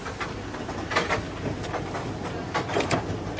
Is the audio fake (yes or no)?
no